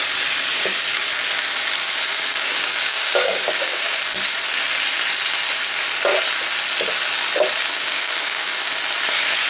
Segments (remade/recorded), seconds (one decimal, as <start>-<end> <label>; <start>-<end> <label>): 0.0-0.5 recorded; 0.5-1.0 remade; 1.0-2.1 recorded; 2.1-4.0 remade; 4.0-7.7 recorded; 7.7-8.7 remade; 8.7-9.5 recorded